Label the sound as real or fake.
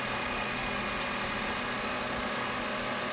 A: real